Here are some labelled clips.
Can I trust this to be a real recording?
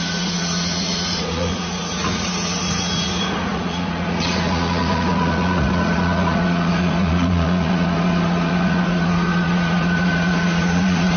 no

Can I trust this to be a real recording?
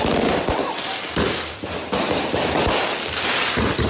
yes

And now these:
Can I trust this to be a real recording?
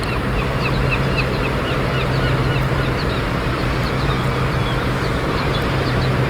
no